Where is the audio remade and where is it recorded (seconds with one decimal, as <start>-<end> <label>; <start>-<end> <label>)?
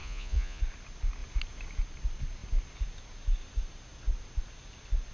0.0-0.6 remade; 0.6-5.1 recorded